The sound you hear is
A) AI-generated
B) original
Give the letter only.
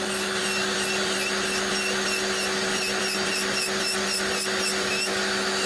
B